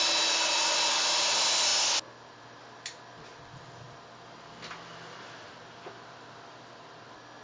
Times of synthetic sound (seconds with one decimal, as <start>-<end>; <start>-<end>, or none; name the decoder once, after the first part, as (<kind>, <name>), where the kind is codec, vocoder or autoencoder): none